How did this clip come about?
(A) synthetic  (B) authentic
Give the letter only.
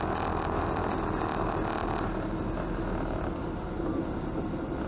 B